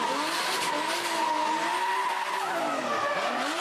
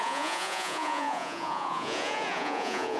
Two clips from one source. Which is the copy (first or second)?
second